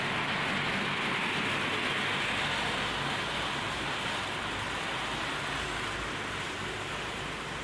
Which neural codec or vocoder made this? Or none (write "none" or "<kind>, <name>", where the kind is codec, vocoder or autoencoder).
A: none